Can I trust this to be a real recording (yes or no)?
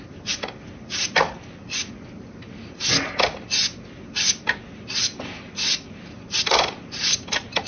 yes